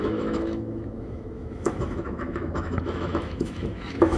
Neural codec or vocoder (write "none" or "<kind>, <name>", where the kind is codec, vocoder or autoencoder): autoencoder, DAC-VAE